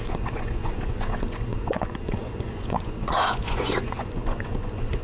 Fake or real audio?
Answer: fake